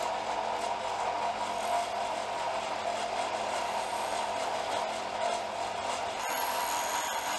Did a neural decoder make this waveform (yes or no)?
no